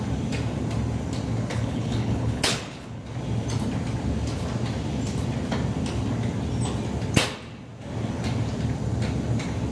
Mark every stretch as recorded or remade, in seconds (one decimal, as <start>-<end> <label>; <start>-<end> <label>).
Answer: 0.0-1.5 recorded; 1.5-3.0 remade; 3.0-9.7 recorded